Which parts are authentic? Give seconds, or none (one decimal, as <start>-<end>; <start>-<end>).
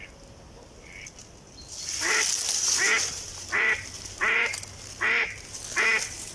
0.0-6.3